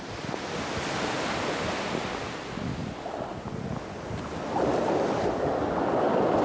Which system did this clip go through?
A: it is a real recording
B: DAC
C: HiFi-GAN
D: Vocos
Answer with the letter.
A